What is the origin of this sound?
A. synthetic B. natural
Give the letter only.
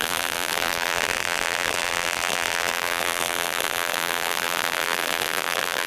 A